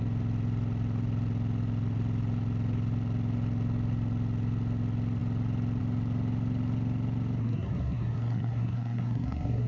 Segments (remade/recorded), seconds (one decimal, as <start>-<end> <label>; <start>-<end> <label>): 0.0-7.4 recorded; 7.4-9.7 remade